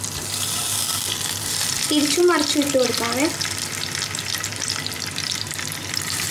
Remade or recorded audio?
recorded